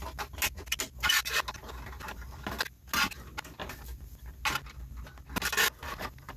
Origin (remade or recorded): recorded